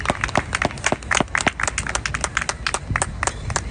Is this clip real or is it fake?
real